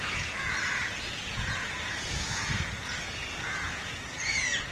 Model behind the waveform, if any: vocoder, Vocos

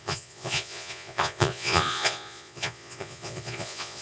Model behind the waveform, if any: vocoder, Vocos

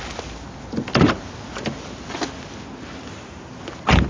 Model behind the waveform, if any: none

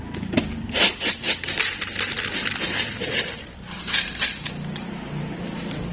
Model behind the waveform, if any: none